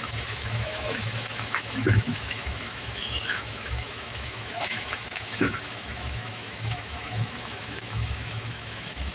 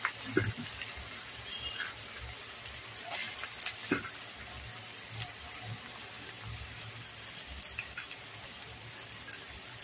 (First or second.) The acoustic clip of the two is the second